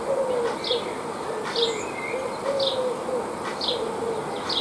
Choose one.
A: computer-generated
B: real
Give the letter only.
B